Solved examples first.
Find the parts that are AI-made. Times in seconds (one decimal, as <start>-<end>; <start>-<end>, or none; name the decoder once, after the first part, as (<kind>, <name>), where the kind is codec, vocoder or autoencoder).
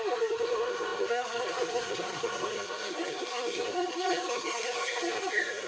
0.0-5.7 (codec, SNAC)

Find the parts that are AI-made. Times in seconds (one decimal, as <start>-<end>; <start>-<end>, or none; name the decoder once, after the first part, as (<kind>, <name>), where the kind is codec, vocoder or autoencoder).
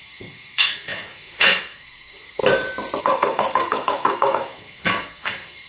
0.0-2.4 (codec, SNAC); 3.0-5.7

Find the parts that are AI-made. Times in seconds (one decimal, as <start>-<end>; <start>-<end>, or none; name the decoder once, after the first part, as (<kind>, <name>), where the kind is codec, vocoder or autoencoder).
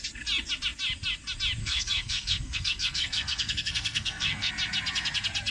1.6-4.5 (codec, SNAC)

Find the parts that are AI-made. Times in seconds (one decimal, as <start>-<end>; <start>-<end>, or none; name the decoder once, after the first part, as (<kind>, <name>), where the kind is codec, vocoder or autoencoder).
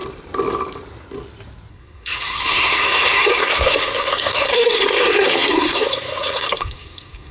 1.7-7.3 (codec, SNAC)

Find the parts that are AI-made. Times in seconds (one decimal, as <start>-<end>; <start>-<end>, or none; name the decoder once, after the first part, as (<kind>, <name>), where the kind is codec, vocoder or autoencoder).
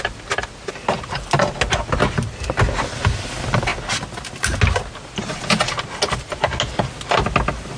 none